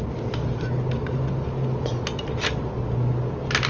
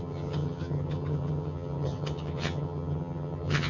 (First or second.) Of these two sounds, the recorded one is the first